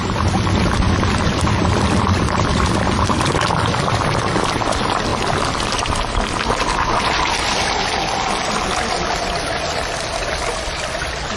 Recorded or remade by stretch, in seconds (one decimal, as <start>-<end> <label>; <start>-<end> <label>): 0.0-5.1 recorded; 5.1-5.9 remade; 5.9-11.4 recorded